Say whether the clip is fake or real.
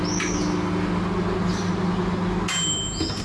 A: real